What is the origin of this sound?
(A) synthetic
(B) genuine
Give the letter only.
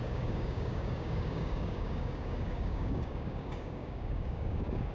A